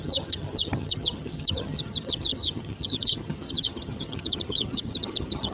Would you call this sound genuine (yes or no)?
no